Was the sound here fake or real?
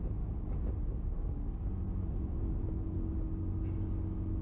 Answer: real